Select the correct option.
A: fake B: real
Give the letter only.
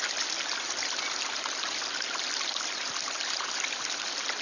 B